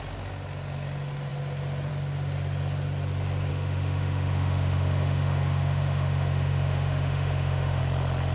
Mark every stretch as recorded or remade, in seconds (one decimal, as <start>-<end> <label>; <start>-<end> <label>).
0.0-3.5 recorded; 3.5-7.8 remade; 7.8-8.3 recorded